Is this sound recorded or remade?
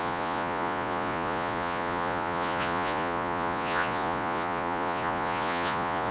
remade